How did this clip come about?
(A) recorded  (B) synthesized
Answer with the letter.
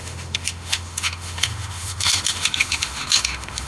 B